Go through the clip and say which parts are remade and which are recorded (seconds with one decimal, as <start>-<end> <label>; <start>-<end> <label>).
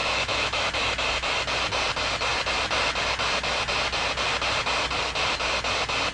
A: 0.0-0.6 remade; 0.6-6.1 recorded